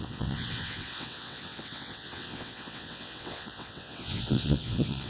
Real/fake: fake